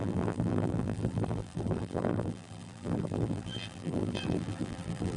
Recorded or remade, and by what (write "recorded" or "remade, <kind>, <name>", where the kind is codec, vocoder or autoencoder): remade, vocoder, BigVGAN v2